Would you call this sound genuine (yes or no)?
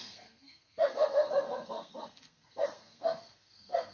no